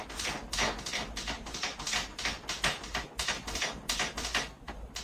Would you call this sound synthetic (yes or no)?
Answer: no